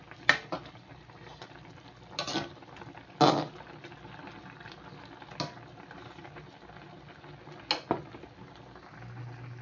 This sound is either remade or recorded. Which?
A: recorded